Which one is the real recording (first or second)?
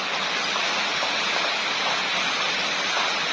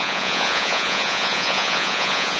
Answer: first